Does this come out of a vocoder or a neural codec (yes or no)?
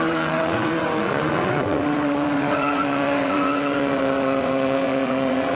yes